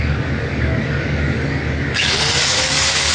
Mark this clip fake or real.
fake